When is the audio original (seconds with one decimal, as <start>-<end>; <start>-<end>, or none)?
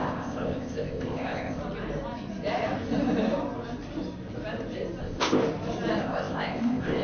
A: 1.6-5.0; 5.4-6.0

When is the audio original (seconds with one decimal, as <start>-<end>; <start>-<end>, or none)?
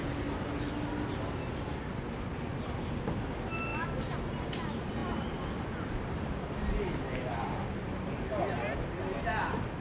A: 0.0-9.8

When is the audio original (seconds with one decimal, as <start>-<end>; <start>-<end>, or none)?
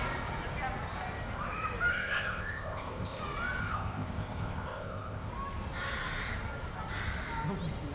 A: 0.0-1.9; 3.2-3.6; 5.3-7.9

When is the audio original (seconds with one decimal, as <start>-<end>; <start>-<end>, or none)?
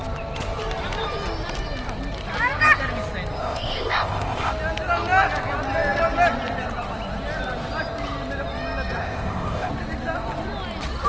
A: 0.0-3.4; 4.5-9.0; 9.7-11.1